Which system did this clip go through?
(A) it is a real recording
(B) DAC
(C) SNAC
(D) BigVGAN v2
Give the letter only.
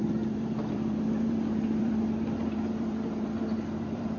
D